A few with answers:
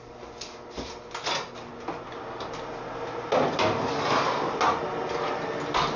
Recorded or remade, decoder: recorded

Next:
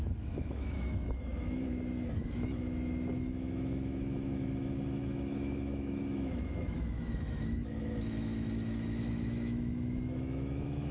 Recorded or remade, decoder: remade, autoencoder, DAC-VAE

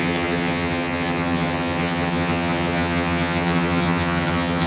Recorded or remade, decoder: remade, vocoder, HiFi-GAN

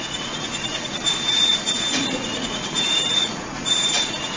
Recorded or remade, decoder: remade, vocoder, Vocos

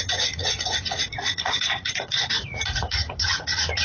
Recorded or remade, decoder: remade, vocoder, Vocos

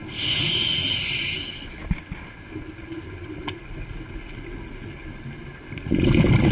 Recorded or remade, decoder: recorded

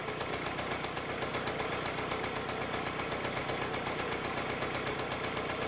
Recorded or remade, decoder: recorded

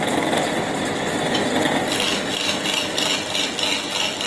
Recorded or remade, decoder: recorded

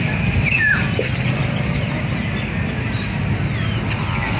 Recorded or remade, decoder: recorded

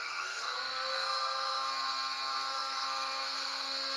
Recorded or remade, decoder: remade, codec, SNAC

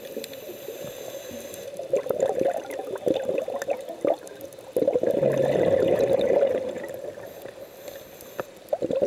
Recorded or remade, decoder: recorded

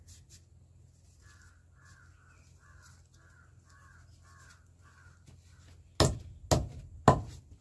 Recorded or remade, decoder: recorded